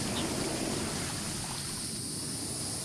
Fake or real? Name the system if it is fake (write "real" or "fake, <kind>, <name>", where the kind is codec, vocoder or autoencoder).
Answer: real